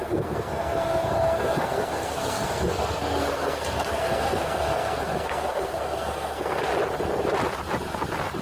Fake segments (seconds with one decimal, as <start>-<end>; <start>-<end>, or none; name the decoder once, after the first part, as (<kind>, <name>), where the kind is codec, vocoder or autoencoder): 0.0-6.7 (codec, SNAC)